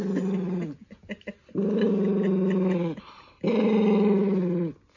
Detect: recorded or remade recorded